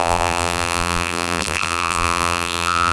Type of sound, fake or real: fake